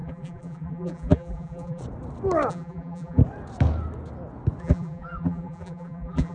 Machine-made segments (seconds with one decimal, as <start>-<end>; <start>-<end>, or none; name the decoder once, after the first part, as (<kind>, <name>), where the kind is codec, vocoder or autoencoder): 0.0-1.8 (vocoder, BigVGAN v2); 2.5-3.2; 4.6-6.3